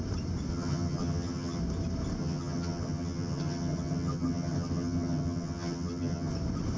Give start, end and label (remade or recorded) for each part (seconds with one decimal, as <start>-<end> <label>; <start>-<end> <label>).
0.0-0.5 recorded; 0.5-1.6 remade; 1.6-2.2 recorded; 2.2-6.3 remade; 6.3-6.8 recorded